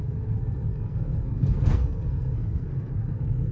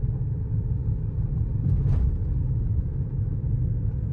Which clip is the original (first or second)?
second